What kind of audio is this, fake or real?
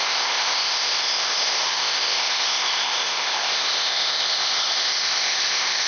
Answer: fake